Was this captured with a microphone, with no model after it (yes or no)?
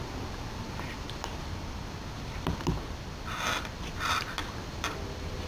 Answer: yes